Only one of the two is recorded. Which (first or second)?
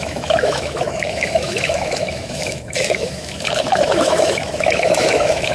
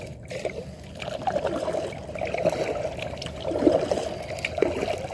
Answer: second